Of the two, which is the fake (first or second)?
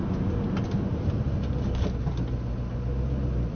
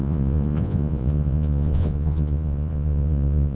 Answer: second